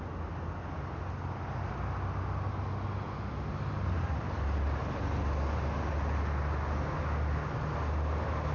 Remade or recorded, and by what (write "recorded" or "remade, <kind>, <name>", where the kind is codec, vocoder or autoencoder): recorded